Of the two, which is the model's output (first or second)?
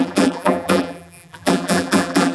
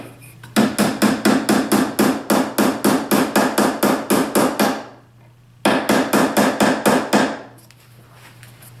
first